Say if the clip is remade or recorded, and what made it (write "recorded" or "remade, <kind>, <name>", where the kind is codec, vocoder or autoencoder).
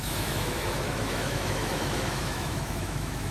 remade, autoencoder, DAC-VAE